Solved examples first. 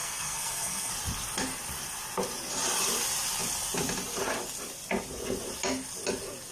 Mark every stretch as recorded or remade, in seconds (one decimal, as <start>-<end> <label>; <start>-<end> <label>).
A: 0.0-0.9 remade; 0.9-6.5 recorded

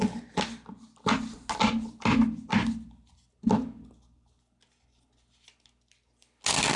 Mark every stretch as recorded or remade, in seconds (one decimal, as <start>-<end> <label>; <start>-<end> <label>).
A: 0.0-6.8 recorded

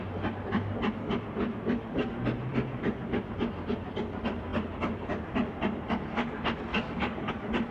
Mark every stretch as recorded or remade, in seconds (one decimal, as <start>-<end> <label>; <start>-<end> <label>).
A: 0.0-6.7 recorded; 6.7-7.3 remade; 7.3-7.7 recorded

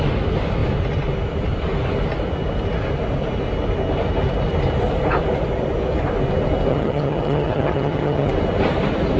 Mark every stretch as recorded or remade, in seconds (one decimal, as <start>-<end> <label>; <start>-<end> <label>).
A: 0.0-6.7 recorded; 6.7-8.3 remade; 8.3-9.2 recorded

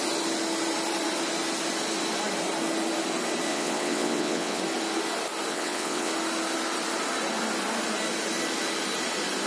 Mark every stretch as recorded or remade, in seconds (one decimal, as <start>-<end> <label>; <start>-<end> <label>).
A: 0.0-3.5 recorded; 3.5-4.6 remade; 4.6-5.5 recorded; 5.5-6.1 remade; 6.1-9.5 recorded